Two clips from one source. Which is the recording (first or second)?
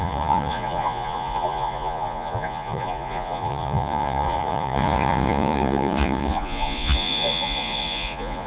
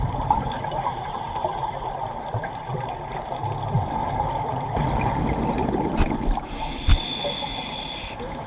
second